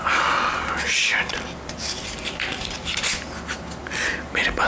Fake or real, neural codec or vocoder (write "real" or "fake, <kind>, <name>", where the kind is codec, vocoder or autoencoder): real